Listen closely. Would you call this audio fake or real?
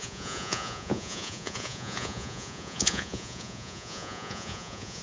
fake